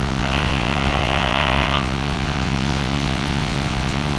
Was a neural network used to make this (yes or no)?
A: yes